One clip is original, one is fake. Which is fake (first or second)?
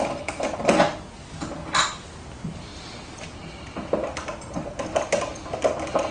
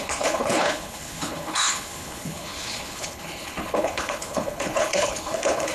second